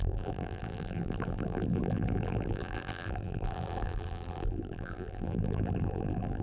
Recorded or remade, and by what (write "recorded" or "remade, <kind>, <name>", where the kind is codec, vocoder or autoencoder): remade, vocoder, BigVGAN v2